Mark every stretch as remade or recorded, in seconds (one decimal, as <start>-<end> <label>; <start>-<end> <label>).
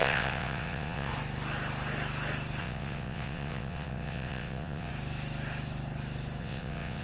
0.0-1.1 remade; 1.1-2.6 recorded; 2.6-4.9 remade; 4.9-6.4 recorded; 6.4-7.0 remade